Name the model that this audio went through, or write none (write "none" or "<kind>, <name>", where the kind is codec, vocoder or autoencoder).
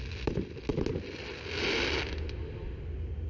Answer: none